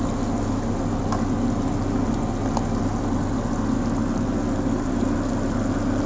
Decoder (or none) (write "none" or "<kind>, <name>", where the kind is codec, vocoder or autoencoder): none